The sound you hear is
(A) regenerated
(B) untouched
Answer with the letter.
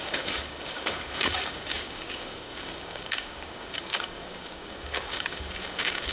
A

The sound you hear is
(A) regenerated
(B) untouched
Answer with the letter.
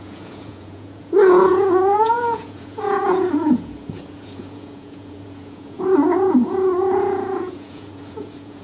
A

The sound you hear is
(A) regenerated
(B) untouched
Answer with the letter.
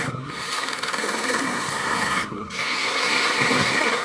A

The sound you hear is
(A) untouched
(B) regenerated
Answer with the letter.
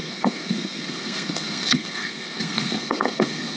B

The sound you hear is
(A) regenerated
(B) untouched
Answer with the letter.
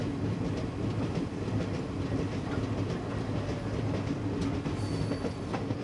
B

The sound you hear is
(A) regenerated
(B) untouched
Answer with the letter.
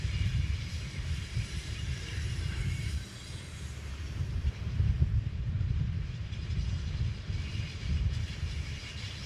A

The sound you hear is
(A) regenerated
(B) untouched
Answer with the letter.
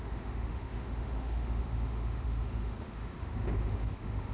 A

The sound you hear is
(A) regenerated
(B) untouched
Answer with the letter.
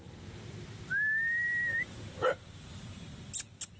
B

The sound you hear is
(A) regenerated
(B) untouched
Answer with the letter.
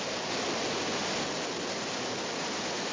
B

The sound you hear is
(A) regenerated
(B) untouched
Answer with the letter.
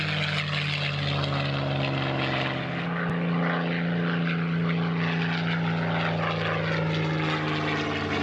B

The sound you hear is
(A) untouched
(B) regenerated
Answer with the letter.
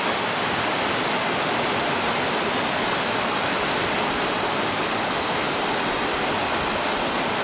A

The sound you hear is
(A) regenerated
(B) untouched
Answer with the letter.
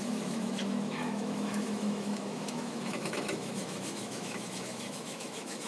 A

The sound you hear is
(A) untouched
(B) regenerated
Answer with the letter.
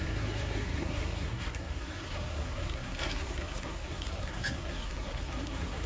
B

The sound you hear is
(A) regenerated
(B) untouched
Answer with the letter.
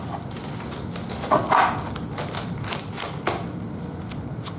B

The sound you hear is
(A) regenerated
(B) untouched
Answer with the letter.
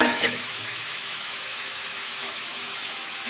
A